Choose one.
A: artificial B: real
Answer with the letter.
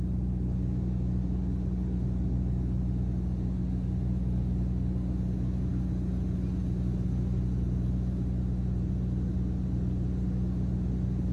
B